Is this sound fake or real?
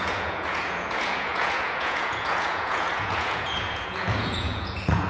fake